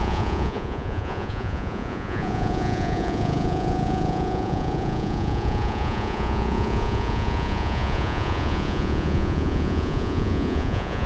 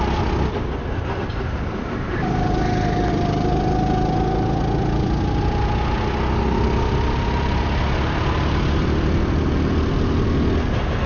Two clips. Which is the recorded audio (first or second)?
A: second